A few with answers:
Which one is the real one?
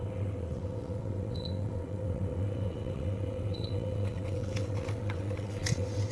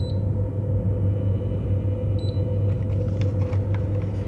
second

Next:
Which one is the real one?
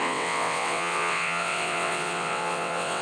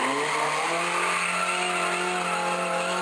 second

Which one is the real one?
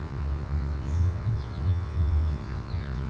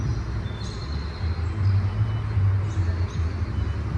second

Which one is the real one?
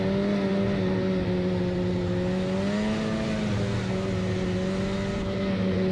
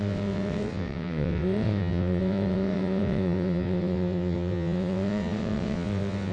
first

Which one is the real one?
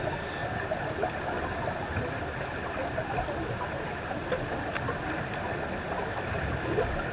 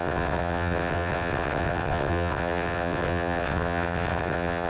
first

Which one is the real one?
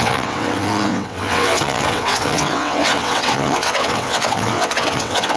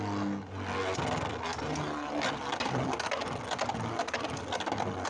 second